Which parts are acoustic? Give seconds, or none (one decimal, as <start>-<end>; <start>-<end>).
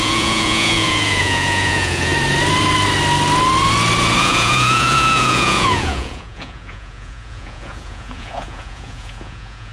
2.1-4.2